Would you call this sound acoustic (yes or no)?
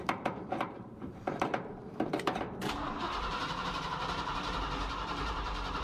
no